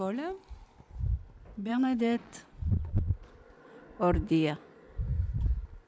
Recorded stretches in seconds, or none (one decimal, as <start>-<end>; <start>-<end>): 0.0-1.7; 3.1-5.9